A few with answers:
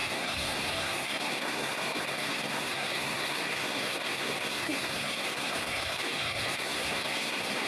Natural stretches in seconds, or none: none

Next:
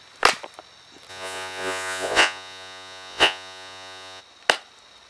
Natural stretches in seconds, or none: 0.0-1.1; 4.2-5.1

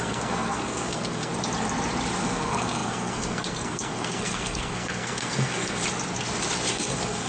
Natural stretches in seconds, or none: 1.3-2.2; 5.8-6.7

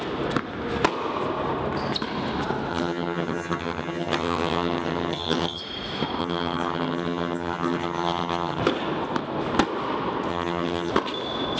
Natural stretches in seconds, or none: 0.0-2.7; 5.6-6.2; 8.6-10.3; 10.9-11.6

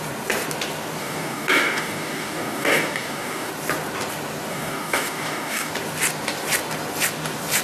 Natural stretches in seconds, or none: 0.0-1.0; 3.5-4.5; 5.7-7.6

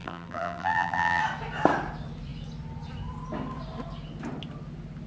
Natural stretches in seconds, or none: 1.2-5.1

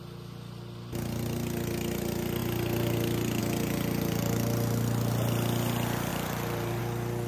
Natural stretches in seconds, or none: 0.0-6.1; 6.8-7.3

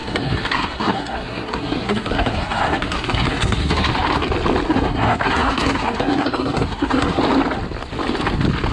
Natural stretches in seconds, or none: 3.9-4.7; 7.2-8.7